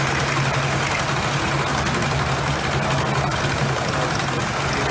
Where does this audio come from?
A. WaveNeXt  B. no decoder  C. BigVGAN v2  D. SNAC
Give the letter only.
B